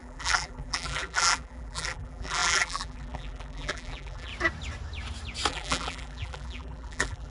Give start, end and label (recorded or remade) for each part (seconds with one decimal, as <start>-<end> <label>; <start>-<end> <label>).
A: 0.0-4.3 remade; 4.3-5.5 recorded; 5.5-7.3 remade

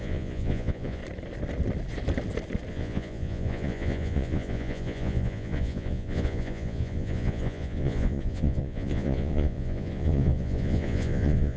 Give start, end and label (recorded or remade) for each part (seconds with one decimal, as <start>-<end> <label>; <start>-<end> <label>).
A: 0.0-1.0 remade; 1.0-2.7 recorded; 2.7-11.6 remade